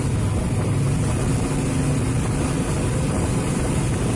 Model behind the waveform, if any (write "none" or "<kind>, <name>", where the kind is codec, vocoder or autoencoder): none